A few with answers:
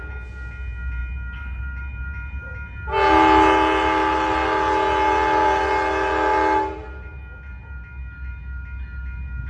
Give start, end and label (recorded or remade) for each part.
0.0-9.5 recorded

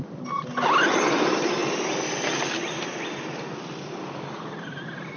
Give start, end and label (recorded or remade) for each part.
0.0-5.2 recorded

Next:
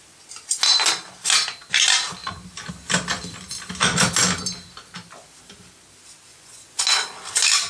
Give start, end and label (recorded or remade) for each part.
0.0-6.3 recorded; 6.3-6.8 remade; 6.8-7.7 recorded